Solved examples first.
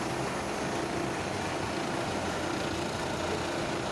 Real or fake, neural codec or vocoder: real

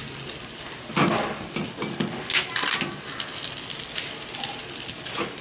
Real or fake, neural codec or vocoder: real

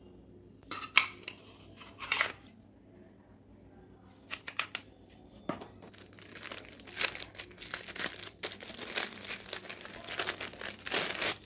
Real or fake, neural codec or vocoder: real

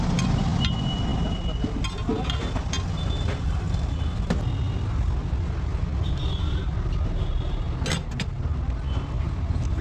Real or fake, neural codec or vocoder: real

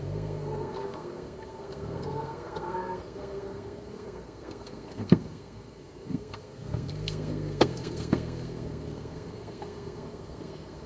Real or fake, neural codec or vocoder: fake, codec, SNAC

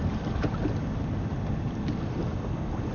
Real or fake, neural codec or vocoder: real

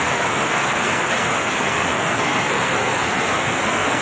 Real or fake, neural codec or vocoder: fake, codec, SNAC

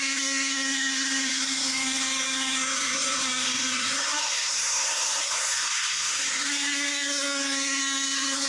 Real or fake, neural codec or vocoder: fake, codec, SNAC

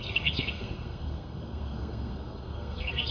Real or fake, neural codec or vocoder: fake, codec, SNAC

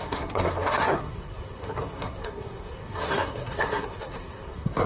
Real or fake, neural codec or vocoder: fake, codec, SNAC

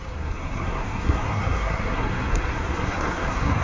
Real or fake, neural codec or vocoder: fake, codec, SNAC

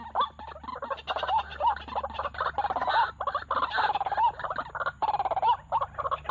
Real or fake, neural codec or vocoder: real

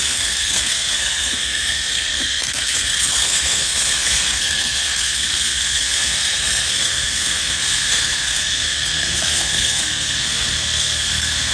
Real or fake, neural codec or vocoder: fake, codec, SNAC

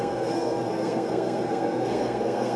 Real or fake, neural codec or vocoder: fake, codec, SNAC